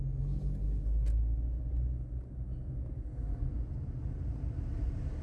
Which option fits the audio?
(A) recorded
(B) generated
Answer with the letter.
A